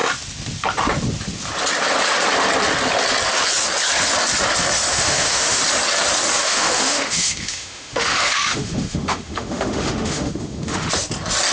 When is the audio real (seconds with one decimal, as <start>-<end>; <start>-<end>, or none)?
0.0-4.9; 5.6-6.4; 10.9-11.5